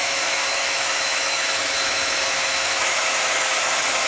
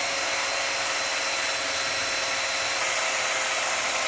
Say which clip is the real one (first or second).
second